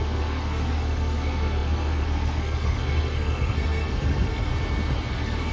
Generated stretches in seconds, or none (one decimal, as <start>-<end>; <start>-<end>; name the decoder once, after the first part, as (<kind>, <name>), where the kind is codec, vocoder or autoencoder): 0.0-4.5 (codec, SNAC); 5.1-5.5